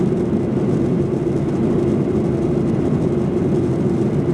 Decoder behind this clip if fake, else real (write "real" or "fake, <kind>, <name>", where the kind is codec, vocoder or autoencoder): real